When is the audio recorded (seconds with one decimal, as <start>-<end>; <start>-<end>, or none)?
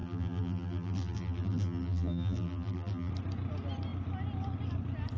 3.1-5.2